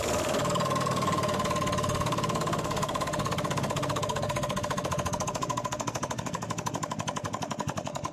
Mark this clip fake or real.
fake